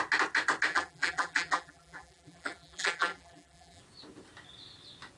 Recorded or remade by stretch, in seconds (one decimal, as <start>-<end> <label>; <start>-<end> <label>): 0.0-0.7 recorded; 0.7-3.8 remade; 3.8-5.2 recorded